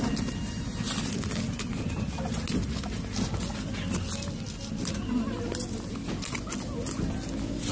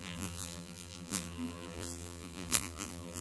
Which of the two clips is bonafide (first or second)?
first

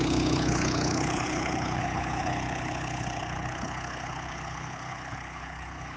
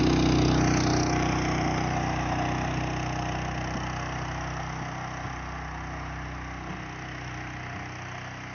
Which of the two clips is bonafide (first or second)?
second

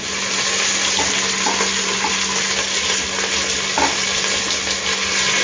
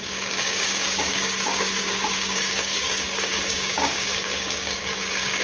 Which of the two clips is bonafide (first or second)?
first